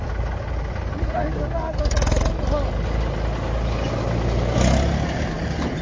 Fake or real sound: real